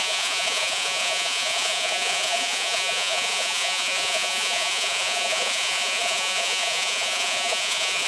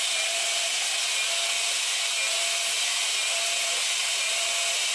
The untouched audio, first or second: second